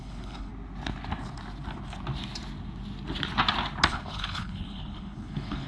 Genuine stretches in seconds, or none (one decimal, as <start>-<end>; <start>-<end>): 0.5-3.9